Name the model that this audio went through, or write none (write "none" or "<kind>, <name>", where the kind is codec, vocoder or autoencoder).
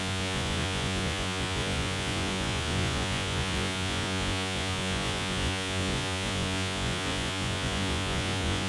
vocoder, Vocos